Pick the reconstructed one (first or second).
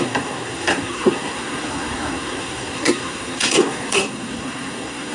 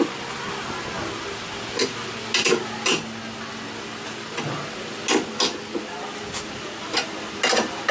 first